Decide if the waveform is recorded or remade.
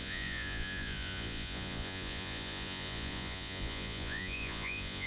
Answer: remade